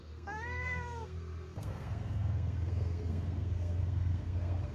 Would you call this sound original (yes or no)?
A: no